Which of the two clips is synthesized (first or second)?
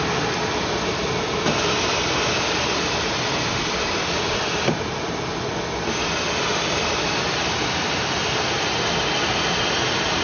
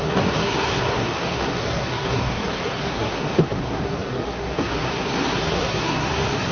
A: second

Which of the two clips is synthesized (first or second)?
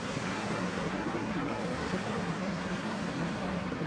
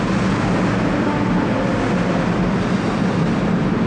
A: first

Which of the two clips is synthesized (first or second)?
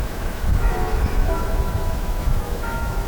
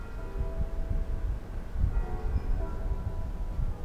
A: first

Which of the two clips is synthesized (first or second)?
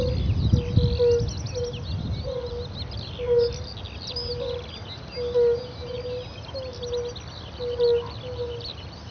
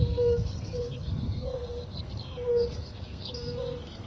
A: second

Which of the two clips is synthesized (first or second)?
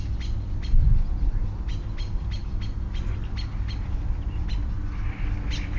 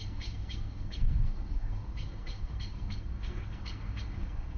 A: second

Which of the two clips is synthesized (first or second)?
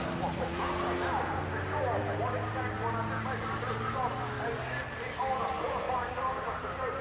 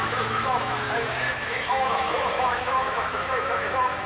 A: second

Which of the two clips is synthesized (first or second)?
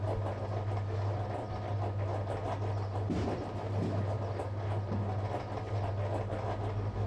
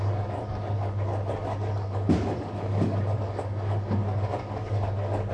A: second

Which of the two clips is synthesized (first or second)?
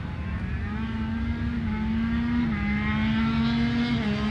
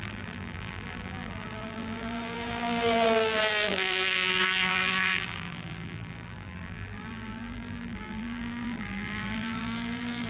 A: second